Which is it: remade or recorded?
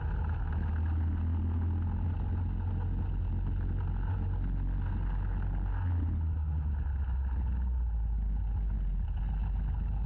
recorded